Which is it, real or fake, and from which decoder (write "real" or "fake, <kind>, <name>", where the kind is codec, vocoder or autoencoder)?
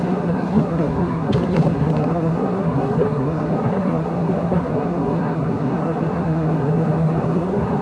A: fake, codec, SNAC